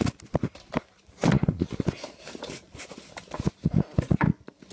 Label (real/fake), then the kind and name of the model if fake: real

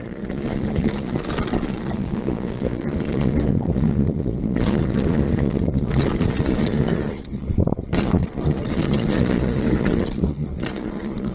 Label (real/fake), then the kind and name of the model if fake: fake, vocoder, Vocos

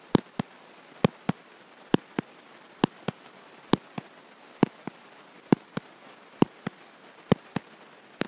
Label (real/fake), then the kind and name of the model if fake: real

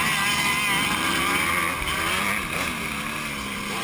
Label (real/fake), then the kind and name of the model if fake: real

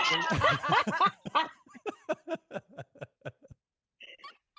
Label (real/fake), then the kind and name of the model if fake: real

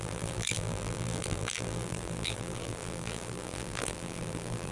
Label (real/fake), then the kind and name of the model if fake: fake, vocoder, BigVGAN v2